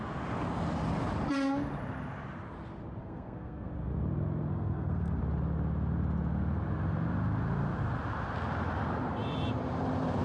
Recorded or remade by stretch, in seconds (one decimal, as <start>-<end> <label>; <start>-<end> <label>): 0.0-3.0 recorded; 3.0-3.7 remade; 3.7-4.5 recorded; 4.5-5.2 remade; 5.2-10.2 recorded